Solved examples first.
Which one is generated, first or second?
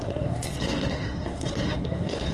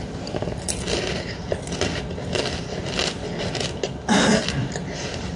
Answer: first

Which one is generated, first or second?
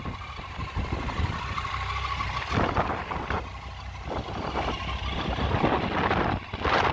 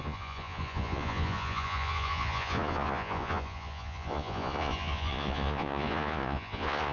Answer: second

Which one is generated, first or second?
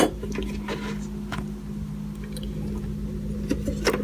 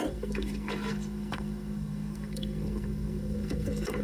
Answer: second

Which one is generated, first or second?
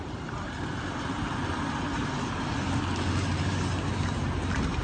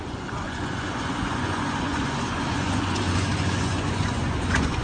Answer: second